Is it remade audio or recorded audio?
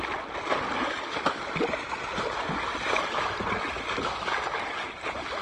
recorded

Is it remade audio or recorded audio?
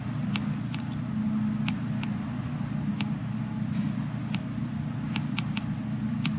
recorded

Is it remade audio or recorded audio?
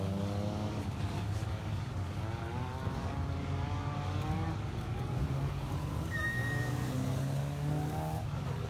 remade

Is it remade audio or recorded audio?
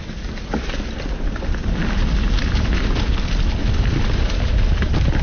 recorded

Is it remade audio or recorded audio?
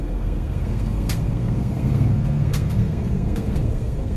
remade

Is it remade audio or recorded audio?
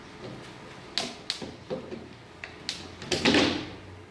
recorded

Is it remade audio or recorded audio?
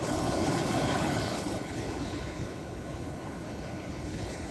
remade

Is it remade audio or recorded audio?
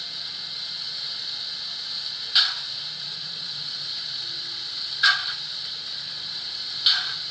recorded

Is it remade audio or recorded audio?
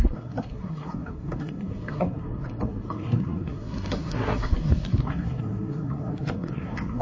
remade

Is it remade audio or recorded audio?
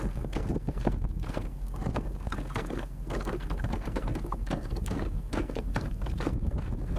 remade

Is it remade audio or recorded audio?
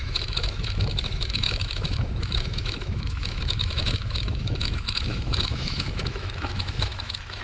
remade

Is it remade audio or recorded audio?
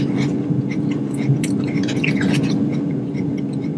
remade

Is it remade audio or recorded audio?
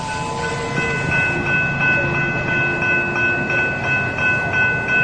recorded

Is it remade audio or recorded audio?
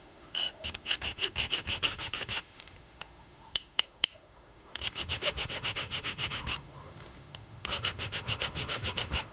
remade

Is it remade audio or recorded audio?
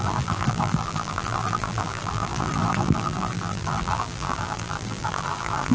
remade